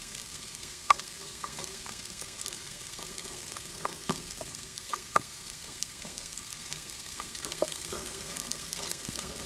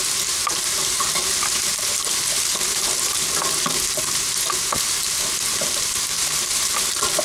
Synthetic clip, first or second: first